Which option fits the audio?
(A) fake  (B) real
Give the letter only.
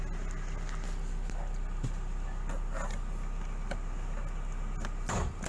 B